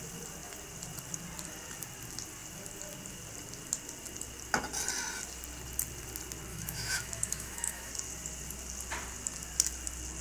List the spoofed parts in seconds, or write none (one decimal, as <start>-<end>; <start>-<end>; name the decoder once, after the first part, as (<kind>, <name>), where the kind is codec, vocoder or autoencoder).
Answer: 6.5-7.9 (autoencoder, DAC-VAE)